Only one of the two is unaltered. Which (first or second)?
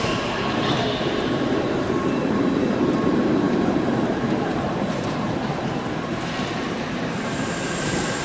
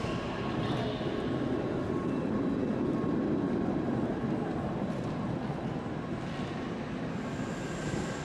second